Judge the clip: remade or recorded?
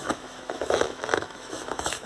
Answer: remade